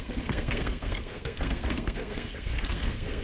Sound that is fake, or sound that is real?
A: fake